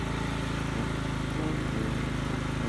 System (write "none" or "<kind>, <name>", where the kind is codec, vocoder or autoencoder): none